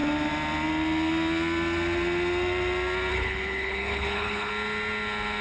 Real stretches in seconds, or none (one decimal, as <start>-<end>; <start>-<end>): 0.0-3.1; 4.5-5.4